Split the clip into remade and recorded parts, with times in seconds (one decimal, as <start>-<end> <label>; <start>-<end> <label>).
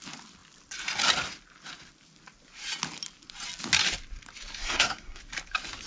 0.0-4.6 recorded; 4.6-5.2 remade; 5.2-5.9 recorded